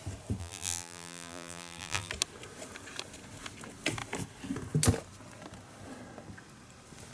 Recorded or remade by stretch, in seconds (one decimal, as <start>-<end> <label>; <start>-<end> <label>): 0.0-0.4 recorded; 0.4-2.1 remade; 2.1-7.1 recorded